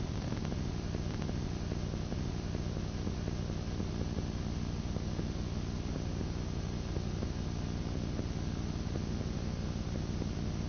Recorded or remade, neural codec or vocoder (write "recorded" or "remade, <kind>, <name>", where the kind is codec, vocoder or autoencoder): recorded